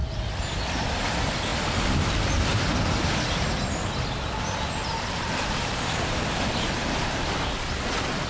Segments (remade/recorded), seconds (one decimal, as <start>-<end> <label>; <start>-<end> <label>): 0.0-8.3 recorded